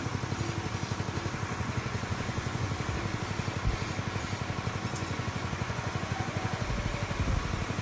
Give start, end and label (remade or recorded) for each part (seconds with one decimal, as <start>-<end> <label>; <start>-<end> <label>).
0.0-1.5 recorded; 1.5-2.7 remade; 2.7-4.8 recorded; 4.8-6.8 remade; 6.8-7.8 recorded